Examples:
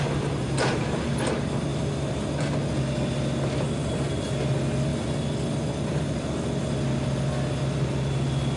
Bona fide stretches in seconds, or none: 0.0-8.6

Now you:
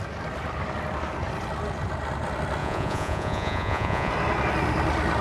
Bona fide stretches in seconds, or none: 0.0-2.6; 4.1-5.2

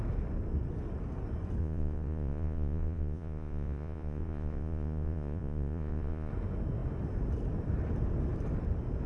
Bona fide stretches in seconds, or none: 0.0-1.6; 6.3-9.1

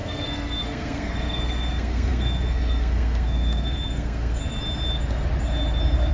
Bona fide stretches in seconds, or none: 4.4-6.1

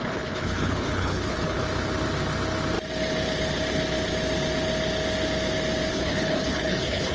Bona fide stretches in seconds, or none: 1.6-5.9

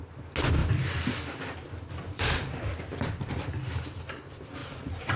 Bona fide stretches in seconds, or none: 0.0-0.6; 3.7-4.6

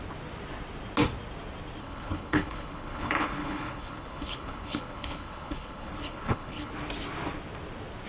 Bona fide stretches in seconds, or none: 0.0-1.8; 6.7-8.1